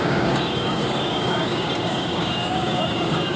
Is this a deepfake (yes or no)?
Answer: yes